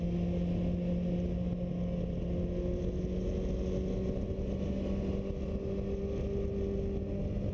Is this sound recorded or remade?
recorded